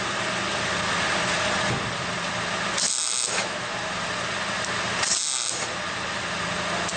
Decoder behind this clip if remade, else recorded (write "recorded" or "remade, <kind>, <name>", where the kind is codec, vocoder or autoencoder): recorded